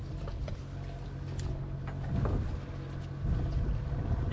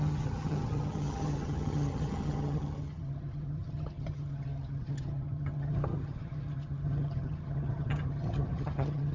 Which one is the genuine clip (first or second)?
first